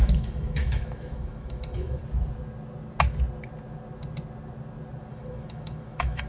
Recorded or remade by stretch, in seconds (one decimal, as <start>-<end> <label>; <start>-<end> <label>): 0.0-2.0 remade; 2.0-5.1 recorded; 5.1-6.3 remade